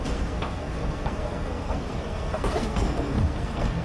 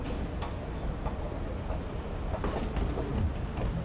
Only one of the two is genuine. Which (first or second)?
second